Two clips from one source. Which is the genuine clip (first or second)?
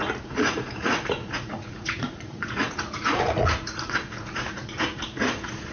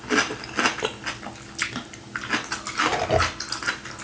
second